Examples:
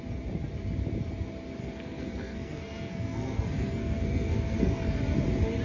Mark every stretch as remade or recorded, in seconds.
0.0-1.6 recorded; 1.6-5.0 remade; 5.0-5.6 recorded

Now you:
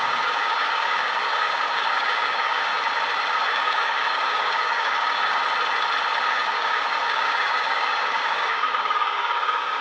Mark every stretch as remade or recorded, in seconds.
0.0-2.7 remade; 2.7-3.3 recorded; 3.3-5.4 remade; 5.4-6.3 recorded; 6.3-9.8 remade